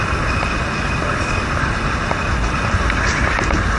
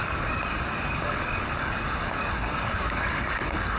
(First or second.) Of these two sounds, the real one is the first